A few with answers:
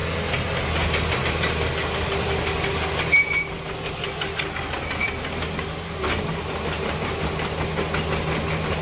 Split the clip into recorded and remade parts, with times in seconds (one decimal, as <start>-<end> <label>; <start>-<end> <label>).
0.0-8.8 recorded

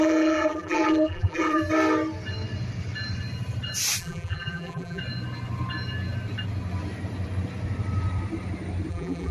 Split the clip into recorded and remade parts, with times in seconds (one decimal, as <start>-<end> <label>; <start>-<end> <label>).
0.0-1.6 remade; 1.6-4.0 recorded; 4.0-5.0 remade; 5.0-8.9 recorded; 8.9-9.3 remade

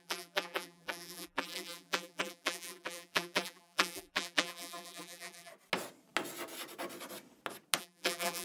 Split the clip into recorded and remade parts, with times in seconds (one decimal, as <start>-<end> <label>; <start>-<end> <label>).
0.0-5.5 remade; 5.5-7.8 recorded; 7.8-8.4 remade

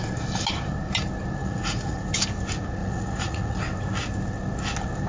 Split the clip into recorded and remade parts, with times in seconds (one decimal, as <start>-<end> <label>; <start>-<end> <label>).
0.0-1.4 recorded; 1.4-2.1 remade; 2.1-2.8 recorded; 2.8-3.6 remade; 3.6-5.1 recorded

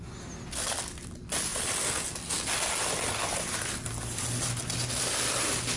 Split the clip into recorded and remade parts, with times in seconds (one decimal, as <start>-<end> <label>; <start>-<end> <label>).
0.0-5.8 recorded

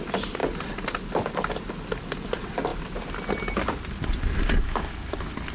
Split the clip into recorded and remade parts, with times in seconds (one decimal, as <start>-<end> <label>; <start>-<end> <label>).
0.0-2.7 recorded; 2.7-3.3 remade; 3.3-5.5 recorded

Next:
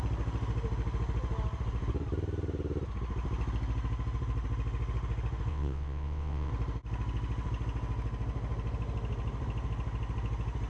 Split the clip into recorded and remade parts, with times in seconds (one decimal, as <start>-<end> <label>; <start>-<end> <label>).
0.0-5.5 recorded; 5.5-6.5 remade; 6.5-10.7 recorded